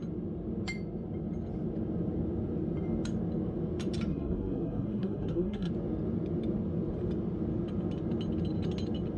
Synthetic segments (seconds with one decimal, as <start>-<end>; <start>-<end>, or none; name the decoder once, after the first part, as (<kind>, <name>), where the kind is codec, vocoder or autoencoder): 4.1-5.7 (codec, SNAC)